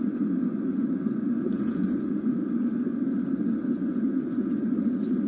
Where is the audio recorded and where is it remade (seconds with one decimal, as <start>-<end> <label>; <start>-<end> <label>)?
0.0-2.4 remade; 2.4-3.7 recorded; 3.7-5.3 remade